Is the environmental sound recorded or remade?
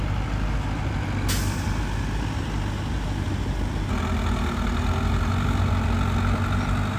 recorded